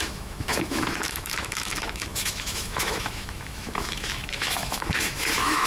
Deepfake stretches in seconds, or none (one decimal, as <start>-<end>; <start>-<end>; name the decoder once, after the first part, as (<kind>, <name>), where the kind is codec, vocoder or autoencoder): 0.0-5.7 (autoencoder, DAC-VAE)